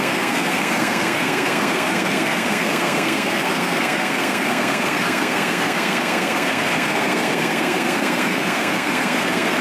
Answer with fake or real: fake